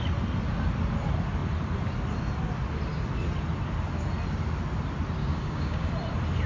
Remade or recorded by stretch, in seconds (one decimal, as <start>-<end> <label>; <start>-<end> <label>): 0.0-5.2 recorded; 5.2-5.9 remade; 5.9-6.5 recorded